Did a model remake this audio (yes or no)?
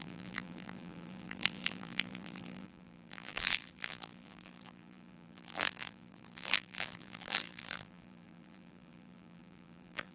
yes